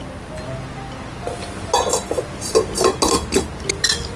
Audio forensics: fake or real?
real